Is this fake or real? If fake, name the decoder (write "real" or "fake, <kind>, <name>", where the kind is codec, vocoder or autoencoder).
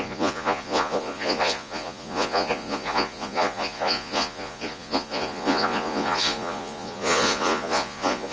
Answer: fake, vocoder, Vocos